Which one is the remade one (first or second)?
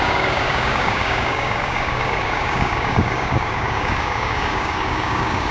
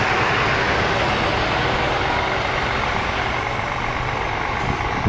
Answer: first